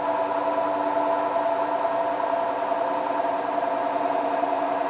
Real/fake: real